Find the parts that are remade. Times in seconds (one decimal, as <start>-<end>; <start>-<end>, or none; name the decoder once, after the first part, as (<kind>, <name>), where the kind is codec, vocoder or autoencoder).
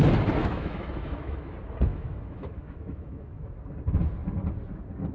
0.4-1.5 (autoencoder, DAC-VAE); 1.9-3.5